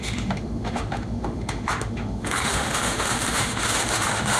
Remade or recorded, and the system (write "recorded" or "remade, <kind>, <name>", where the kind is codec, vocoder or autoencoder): remade, autoencoder, DAC-VAE